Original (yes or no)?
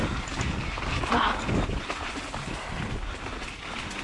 yes